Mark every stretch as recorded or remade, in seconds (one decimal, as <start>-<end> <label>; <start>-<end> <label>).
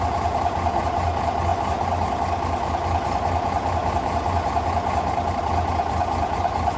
0.0-6.8 recorded